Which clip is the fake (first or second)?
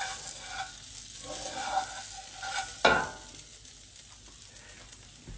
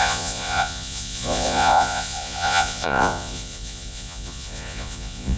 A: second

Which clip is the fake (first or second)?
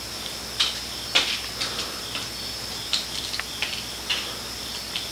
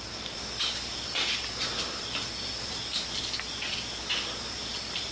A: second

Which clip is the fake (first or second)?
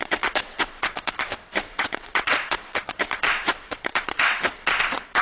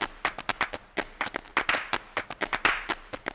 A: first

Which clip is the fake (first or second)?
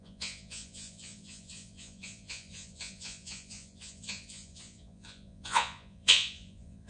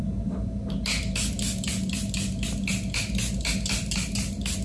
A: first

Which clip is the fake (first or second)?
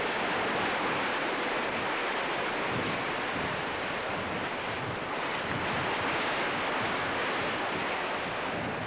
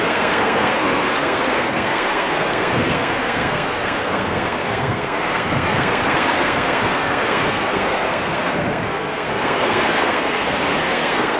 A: second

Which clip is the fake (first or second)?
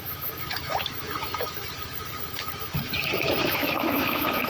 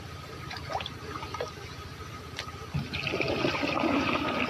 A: first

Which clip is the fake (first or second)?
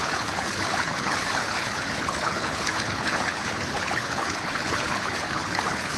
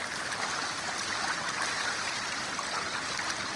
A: first